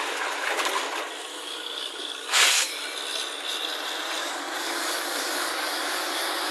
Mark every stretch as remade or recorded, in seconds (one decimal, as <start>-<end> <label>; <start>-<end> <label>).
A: 0.0-1.3 recorded; 1.3-2.7 remade; 2.7-4.2 recorded; 4.2-6.5 remade